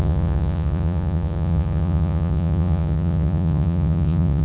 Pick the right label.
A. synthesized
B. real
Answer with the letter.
A